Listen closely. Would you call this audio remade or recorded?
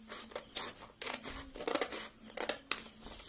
recorded